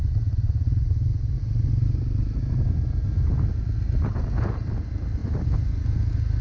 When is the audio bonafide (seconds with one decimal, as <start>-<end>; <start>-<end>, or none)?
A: 0.0-6.4